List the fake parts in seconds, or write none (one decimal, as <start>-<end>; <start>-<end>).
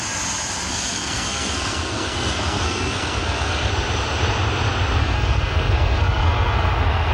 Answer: 0.7-3.7; 5.0-7.1